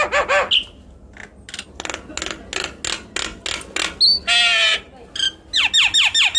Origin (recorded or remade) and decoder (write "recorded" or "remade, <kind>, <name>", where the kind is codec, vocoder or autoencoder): recorded